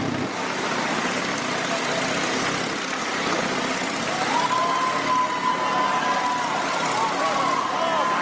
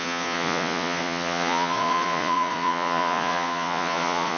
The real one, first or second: first